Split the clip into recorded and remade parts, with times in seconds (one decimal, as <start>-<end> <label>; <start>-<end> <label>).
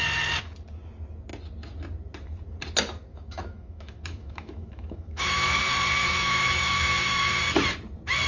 0.0-3.1 recorded; 3.1-5.6 remade; 5.6-6.0 recorded; 6.0-7.4 remade; 7.4-8.3 recorded